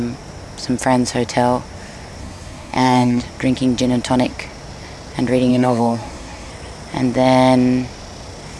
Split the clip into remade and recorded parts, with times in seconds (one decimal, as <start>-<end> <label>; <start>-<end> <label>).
0.0-2.2 recorded; 2.2-3.2 remade; 3.2-5.5 recorded; 5.5-6.5 remade; 6.5-8.6 recorded